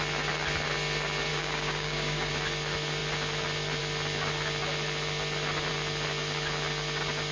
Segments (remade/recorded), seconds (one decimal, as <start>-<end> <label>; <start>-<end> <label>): 0.0-1.3 recorded; 1.3-2.3 remade; 2.3-7.3 recorded